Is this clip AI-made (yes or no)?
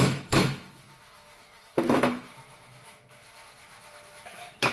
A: yes